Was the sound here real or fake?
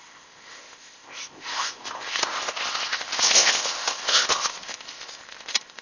fake